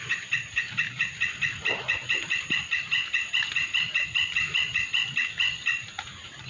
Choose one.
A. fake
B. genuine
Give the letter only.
B